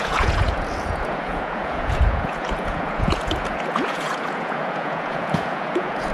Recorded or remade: remade